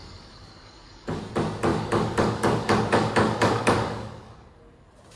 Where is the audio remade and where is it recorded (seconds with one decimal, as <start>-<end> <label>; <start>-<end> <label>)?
0.0-1.2 remade; 1.2-1.7 recorded; 1.7-4.8 remade; 4.8-5.2 recorded